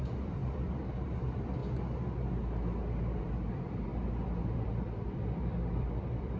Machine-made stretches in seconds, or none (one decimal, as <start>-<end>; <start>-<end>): 0.0-0.4; 1.2-1.6; 3.2-3.9; 4.4-6.4